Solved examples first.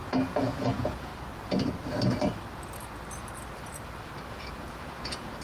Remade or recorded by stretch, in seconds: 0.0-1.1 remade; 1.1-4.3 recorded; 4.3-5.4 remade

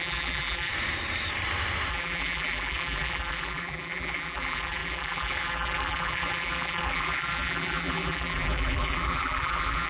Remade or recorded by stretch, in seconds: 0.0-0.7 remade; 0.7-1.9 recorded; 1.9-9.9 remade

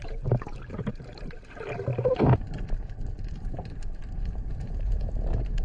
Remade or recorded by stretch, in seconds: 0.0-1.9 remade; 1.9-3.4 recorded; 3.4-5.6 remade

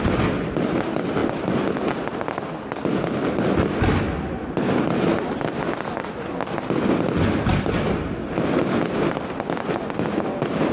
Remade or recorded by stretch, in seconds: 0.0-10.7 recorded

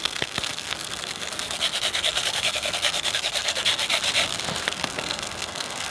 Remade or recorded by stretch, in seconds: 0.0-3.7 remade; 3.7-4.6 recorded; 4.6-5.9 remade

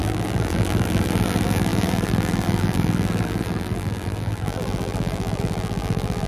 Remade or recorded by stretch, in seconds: 0.0-6.3 remade

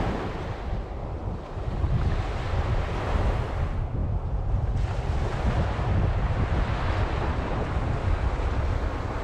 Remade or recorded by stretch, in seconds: 0.0-9.2 recorded

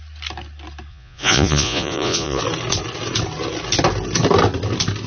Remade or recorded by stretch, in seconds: 0.0-0.9 recorded; 0.9-2.4 remade; 2.4-5.1 recorded